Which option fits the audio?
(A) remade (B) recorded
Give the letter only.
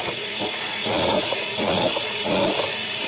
A